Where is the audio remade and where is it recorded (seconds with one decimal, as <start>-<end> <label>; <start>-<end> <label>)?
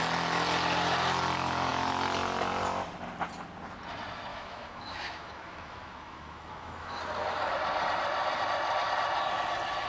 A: 0.0-4.3 recorded; 4.3-7.0 remade; 7.0-9.9 recorded